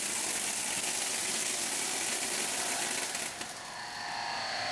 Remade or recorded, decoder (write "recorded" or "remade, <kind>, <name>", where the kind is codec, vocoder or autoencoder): recorded